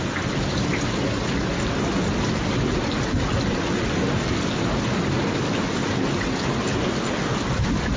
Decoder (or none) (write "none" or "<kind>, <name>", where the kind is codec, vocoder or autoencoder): none